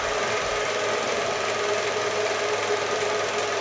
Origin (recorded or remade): recorded